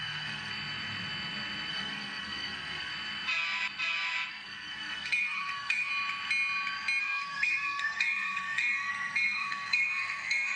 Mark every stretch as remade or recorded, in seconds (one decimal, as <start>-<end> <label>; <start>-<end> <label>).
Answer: 0.0-0.5 remade; 0.5-1.7 recorded; 1.7-2.9 remade; 2.9-4.3 recorded; 4.3-5.9 remade; 5.9-7.0 recorded; 7.0-10.6 remade